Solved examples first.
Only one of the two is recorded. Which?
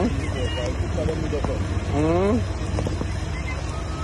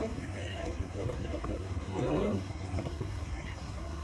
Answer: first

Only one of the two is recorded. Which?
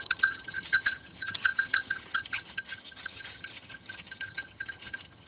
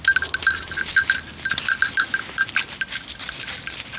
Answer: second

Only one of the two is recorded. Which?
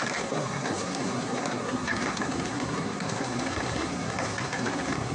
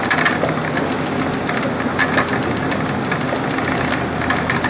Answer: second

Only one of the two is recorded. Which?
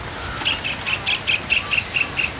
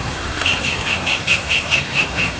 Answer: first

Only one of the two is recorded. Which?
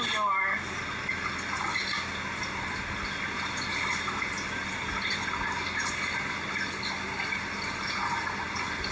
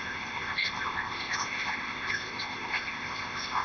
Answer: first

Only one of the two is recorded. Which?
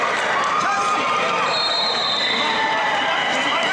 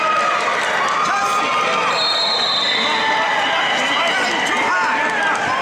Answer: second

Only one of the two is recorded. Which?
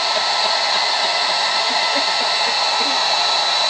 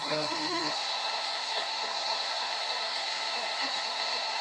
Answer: first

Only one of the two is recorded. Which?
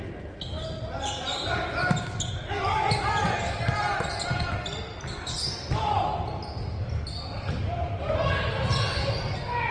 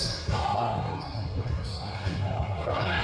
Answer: first